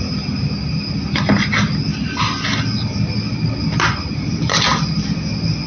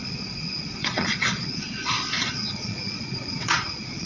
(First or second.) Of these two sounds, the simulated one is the second